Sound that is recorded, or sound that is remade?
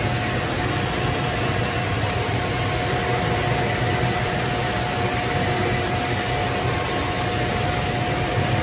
recorded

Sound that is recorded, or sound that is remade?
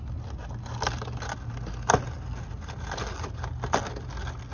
recorded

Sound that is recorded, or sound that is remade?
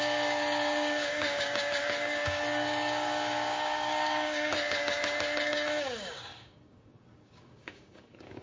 remade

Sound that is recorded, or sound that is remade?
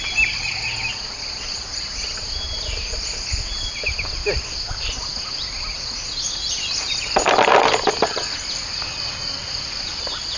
recorded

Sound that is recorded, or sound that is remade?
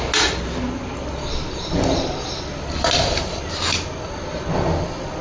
recorded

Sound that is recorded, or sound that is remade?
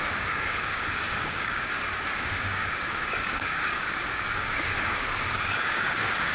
remade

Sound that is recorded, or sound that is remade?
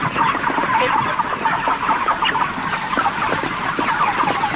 recorded